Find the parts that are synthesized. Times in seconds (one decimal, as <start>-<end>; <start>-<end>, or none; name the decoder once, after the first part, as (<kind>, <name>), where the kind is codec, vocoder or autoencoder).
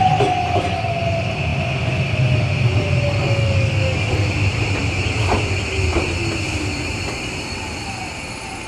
3.2-4.1 (codec, DAC)